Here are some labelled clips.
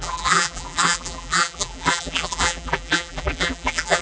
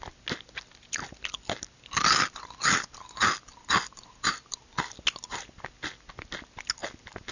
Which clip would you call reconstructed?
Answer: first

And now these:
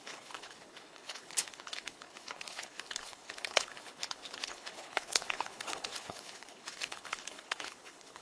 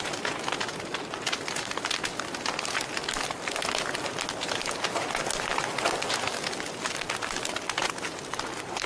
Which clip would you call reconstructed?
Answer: first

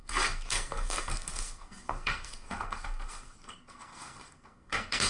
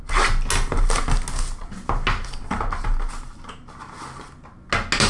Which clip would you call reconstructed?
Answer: first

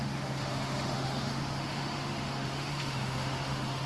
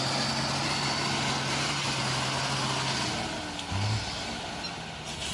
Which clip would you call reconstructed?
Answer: first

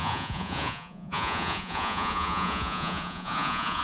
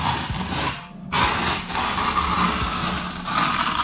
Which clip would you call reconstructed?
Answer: first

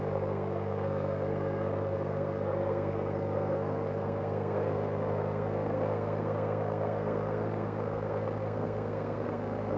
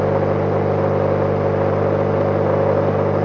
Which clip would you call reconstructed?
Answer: first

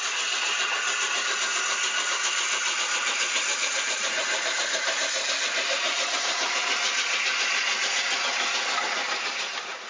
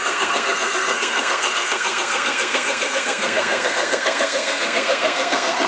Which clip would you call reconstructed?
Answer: second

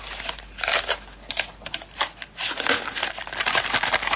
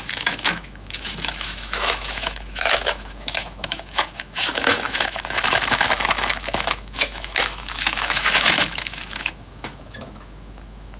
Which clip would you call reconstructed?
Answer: second